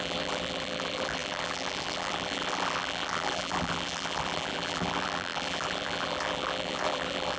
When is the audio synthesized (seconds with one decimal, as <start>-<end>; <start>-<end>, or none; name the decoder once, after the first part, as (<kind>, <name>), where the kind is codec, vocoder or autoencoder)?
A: 0.0-7.4 (vocoder, BigVGAN v2)